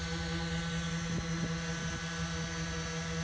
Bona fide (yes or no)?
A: yes